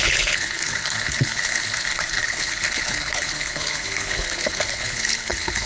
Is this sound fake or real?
fake